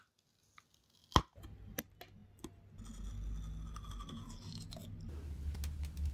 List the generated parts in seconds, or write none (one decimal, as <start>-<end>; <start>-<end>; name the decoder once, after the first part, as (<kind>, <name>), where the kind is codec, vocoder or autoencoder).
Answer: none

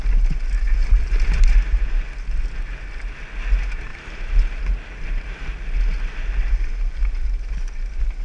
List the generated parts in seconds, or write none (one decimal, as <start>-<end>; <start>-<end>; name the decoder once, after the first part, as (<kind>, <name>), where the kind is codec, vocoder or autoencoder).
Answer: 0.8-1.4 (vocoder, BigVGAN v2); 3.9-4.6